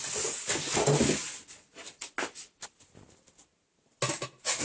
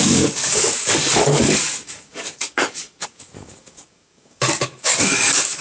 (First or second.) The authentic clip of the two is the first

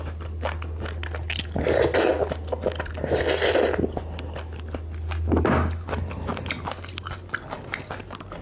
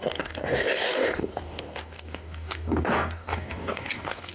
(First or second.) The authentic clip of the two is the first